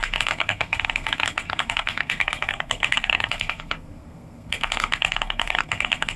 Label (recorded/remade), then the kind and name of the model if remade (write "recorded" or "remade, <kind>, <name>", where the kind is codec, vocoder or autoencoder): remade, codec, SNAC